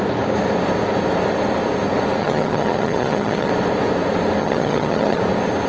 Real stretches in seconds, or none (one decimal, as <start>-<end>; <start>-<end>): 0.0-2.2; 3.5-4.4; 5.2-5.7